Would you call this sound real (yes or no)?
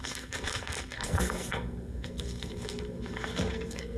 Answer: no